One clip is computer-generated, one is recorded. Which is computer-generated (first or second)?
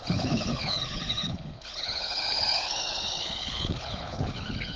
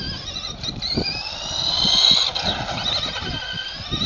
first